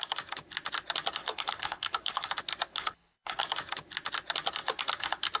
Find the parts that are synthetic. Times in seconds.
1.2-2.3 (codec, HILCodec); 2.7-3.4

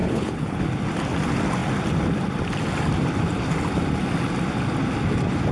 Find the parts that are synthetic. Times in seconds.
0.0-0.6 (codec, HILCodec)

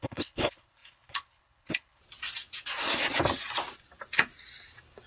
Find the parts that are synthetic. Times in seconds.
0.0-2.0 (codec, HILCodec)

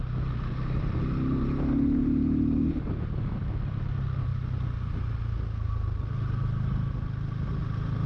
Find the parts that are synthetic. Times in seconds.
none

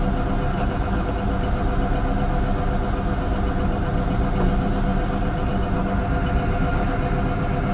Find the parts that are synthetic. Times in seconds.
0.5-1.1 (codec, HILCodec)